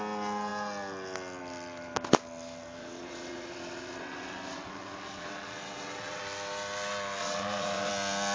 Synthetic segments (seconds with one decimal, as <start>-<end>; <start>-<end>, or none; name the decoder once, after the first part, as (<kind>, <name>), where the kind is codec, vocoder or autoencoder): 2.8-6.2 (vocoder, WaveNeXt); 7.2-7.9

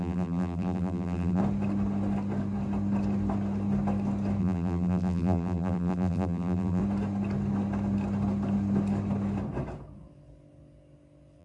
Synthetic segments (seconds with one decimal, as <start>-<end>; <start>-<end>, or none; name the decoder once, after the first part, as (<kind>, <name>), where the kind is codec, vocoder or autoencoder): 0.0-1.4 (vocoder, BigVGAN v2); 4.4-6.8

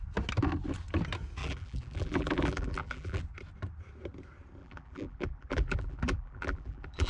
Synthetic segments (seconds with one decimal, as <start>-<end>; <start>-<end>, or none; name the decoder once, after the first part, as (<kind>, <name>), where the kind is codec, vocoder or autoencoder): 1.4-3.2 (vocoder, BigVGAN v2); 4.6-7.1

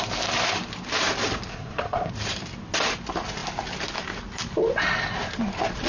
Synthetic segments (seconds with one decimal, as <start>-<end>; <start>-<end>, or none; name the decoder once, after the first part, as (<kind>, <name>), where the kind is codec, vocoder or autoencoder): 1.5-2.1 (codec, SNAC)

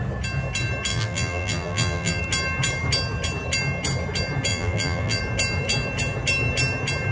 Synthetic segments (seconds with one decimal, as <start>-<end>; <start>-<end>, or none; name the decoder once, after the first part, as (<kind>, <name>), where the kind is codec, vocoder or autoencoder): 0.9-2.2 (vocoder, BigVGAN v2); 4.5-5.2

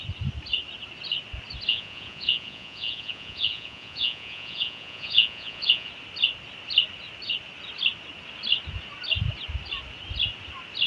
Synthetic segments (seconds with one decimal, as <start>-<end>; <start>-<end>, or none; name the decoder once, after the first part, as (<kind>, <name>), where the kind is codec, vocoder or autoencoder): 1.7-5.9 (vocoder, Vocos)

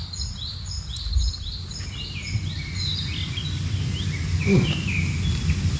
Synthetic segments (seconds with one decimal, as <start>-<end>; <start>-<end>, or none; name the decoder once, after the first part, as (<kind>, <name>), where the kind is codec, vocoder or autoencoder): none